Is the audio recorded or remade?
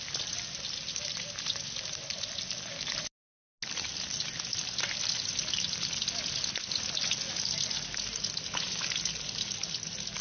recorded